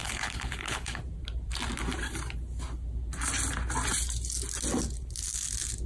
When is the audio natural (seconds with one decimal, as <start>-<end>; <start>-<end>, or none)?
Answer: 1.0-5.9